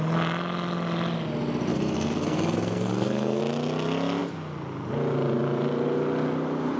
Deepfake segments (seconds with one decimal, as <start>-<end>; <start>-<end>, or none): 1.7-3.4